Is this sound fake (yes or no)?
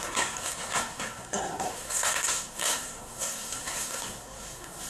yes